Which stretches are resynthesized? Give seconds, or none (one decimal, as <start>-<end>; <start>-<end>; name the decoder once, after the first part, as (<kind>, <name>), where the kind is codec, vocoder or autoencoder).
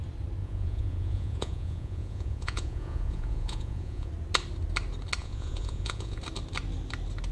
0.4-4.1 (vocoder, Vocos); 5.2-6.2